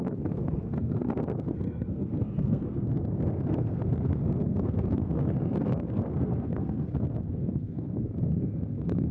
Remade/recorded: remade